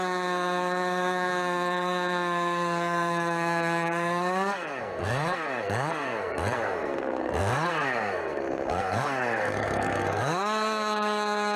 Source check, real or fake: fake